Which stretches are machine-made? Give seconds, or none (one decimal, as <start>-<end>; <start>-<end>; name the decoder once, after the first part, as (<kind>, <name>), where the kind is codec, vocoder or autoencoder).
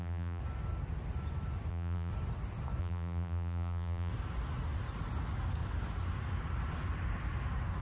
0.0-0.4 (vocoder, BigVGAN v2); 1.7-2.1; 2.8-4.1